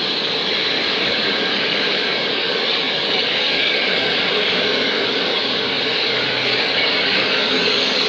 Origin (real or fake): fake